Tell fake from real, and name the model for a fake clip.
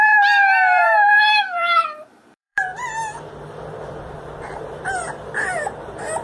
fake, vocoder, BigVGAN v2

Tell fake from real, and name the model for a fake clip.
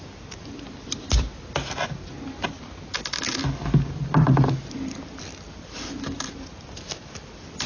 real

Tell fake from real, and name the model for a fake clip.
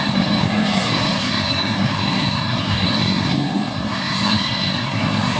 fake, codec, SNAC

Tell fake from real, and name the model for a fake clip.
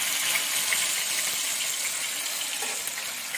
real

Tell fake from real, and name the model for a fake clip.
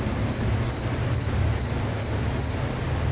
real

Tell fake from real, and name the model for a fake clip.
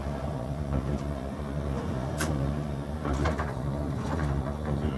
fake, vocoder, Vocos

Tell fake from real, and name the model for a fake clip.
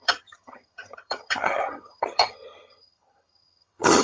fake, vocoder, HiFi-GAN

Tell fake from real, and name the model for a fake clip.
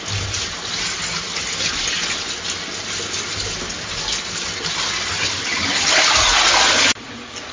real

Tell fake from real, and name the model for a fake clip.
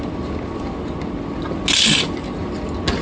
real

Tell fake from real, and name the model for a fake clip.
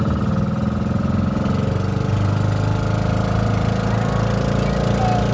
real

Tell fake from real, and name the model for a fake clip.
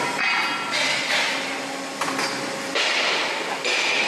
real